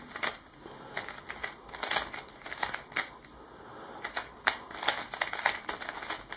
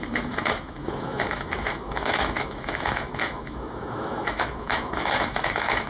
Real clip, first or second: first